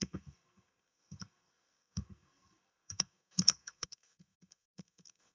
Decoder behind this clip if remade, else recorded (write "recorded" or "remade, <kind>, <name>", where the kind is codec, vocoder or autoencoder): remade, codec, SNAC